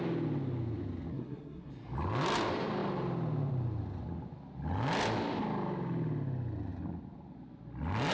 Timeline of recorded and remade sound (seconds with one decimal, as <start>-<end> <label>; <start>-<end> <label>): 0.0-1.1 recorded; 1.1-1.7 remade; 1.7-8.1 recorded

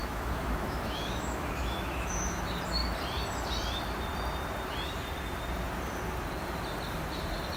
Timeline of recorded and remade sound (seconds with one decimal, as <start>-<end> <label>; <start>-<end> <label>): 0.0-2.4 remade; 2.4-7.6 recorded

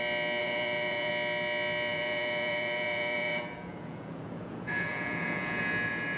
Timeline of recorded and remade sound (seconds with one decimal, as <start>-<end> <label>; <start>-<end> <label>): 0.0-0.4 recorded; 0.4-1.1 remade; 1.1-1.9 recorded; 1.9-5.6 remade; 5.6-6.2 recorded